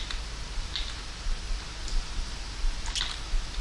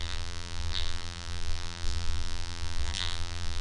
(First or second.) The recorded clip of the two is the first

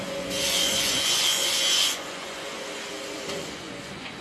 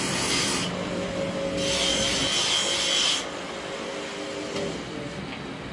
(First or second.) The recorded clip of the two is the second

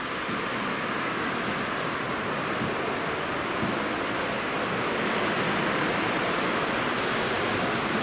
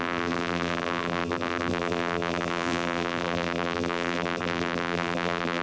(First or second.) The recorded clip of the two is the first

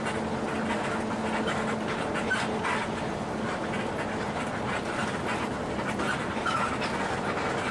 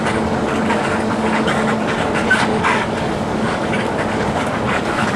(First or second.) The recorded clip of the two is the first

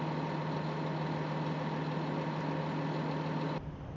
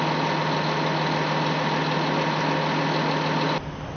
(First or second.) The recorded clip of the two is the second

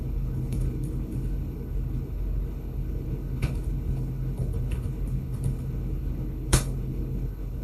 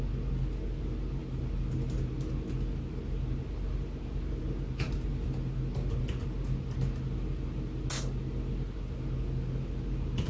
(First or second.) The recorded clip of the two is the second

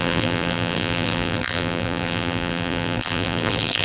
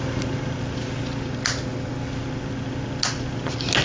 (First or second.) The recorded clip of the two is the second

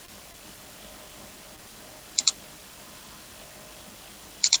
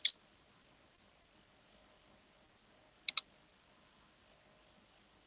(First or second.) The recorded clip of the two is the second